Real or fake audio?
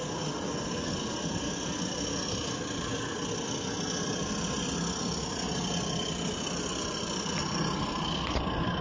real